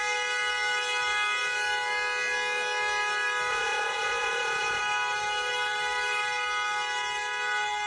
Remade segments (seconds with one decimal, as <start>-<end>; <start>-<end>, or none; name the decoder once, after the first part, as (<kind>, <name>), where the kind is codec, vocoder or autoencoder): 3.5-4.8 (vocoder, Vocos)